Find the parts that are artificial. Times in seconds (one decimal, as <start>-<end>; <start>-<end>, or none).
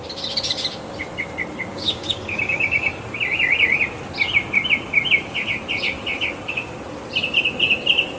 1.7-2.9